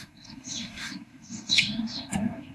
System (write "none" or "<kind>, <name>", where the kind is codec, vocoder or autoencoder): codec, SNAC